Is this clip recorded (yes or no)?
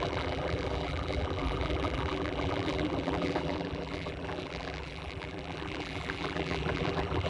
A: no